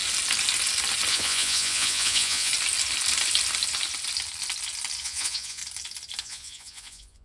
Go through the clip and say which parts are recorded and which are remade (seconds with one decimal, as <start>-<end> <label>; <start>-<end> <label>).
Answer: 0.0-1.1 recorded; 1.1-2.5 remade; 2.5-5.0 recorded; 5.0-5.6 remade; 5.6-6.2 recorded; 6.2-7.2 remade